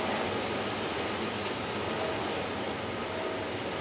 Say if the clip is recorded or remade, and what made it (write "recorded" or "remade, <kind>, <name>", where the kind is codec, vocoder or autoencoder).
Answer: recorded